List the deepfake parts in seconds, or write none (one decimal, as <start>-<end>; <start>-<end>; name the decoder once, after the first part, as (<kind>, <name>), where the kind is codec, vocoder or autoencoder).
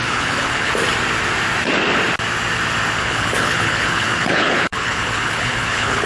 0.0-0.7 (codec, HILCodec); 3.0-6.1